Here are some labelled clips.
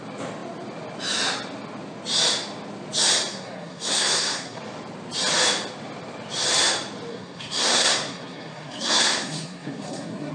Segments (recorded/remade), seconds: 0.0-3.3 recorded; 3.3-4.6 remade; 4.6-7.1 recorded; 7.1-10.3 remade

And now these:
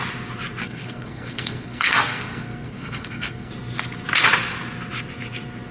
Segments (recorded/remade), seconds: 0.0-0.6 recorded; 0.6-3.5 remade; 3.5-5.7 recorded